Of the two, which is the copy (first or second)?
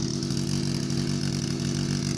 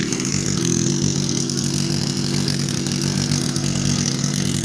second